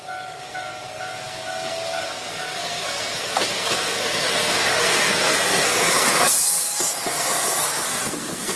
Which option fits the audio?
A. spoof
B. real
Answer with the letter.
A